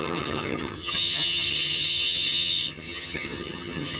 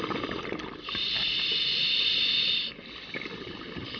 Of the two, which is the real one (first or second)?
second